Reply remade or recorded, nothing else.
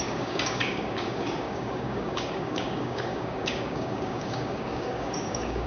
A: remade